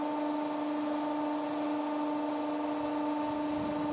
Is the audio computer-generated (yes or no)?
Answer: no